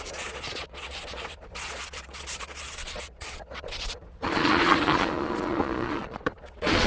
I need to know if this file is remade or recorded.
remade